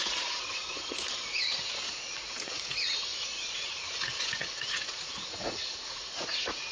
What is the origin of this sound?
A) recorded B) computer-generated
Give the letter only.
B